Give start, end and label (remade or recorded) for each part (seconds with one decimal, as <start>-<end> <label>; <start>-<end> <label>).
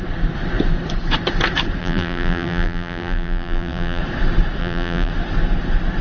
0.0-1.8 recorded; 1.8-4.0 remade; 4.0-4.6 recorded; 4.6-5.1 remade; 5.1-6.0 recorded